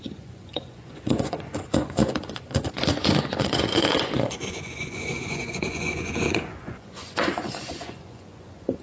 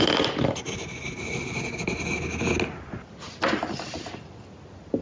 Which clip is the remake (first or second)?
first